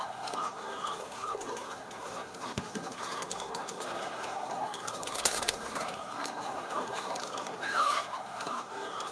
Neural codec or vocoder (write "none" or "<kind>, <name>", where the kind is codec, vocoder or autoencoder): codec, SNAC